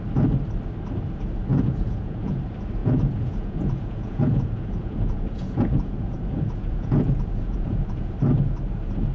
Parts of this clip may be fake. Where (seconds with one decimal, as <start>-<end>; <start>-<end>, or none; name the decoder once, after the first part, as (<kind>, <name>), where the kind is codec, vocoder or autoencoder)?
1.5-2.4 (vocoder, Vocos); 2.8-8.1